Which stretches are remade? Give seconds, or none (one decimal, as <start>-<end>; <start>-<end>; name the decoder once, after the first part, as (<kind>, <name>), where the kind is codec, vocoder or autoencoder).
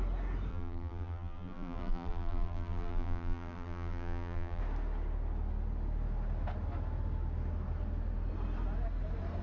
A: 0.5-4.6 (vocoder, BigVGAN v2)